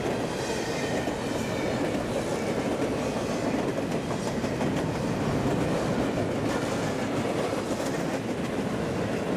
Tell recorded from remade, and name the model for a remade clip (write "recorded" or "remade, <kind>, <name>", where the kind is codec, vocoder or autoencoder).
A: recorded